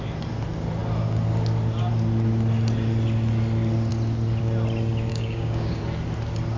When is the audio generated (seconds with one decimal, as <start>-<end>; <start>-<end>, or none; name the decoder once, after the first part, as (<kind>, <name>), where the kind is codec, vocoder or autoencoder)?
5.1-5.8 (codec, DAC)